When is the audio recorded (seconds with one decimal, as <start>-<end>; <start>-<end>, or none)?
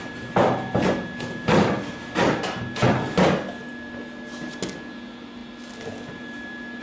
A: 0.0-6.8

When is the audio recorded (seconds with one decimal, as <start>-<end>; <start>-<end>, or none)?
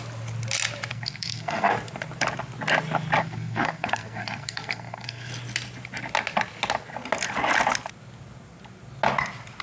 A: 0.0-0.9; 1.7-3.2; 5.3-9.6